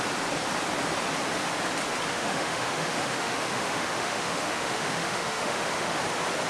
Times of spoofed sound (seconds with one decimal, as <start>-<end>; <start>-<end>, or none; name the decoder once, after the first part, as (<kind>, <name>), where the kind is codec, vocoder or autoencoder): 2.1-6.0 (autoencoder, DAC-VAE)